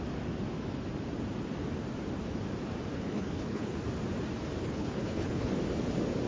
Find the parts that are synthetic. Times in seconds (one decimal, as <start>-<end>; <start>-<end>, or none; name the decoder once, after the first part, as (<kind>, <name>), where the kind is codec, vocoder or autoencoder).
2.9-3.8 (codec, HILCodec); 4.6-5.5